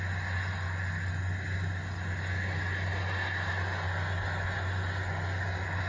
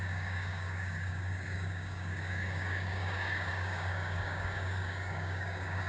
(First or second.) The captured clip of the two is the first